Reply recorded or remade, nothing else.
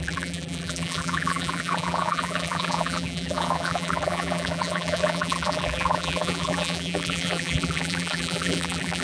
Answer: remade